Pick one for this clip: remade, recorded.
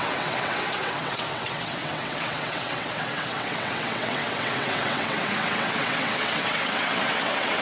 remade